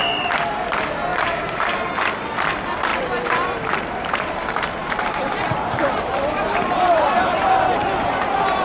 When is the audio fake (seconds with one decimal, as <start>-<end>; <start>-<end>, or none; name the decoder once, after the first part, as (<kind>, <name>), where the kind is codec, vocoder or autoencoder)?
1.1-1.9 (vocoder, BigVGAN v2); 2.9-7.5